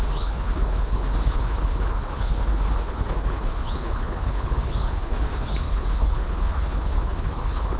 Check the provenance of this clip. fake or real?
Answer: fake